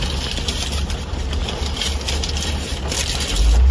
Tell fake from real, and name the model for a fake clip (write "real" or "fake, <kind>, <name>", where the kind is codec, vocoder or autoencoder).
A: real